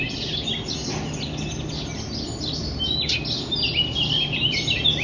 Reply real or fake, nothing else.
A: real